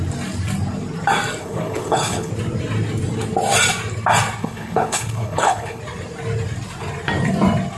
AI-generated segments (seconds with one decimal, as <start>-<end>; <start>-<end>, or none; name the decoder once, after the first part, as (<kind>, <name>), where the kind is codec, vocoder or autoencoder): 1.4-2.3 (codec, HILCodec); 4.4-5.8